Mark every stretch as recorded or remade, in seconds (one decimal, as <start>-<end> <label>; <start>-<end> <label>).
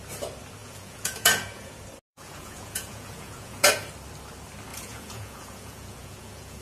0.0-0.6 recorded; 0.6-1.7 remade; 1.7-2.1 recorded; 2.1-3.7 remade; 3.7-4.7 recorded; 4.7-6.6 remade